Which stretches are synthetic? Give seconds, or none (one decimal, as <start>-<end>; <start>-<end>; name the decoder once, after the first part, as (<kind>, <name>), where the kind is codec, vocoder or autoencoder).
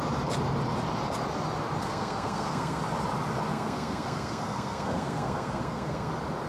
1.8-2.8 (codec, SNAC); 3.5-6.1